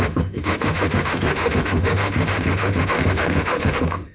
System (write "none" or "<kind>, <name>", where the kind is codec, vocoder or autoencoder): autoencoder, DAC-VAE